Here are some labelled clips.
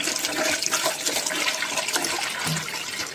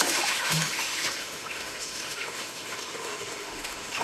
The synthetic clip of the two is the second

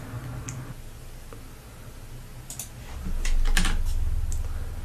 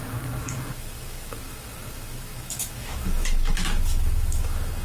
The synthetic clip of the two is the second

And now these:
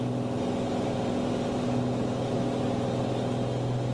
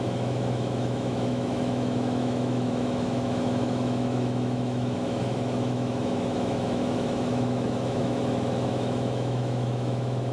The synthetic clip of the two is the second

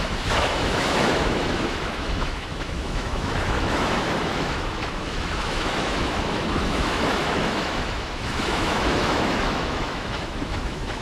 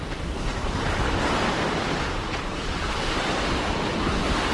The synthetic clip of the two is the first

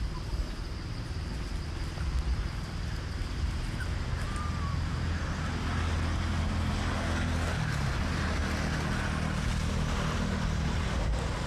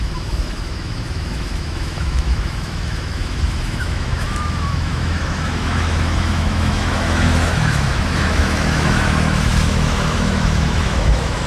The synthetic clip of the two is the second